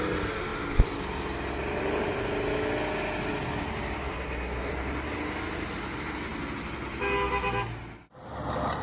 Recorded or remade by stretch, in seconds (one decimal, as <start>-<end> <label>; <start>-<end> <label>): 0.0-4.1 recorded; 4.1-4.7 remade; 4.7-8.8 recorded